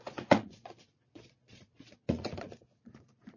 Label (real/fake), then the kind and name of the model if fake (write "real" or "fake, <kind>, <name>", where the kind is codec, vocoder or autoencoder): fake, vocoder, Vocos